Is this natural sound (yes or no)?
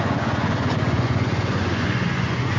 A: no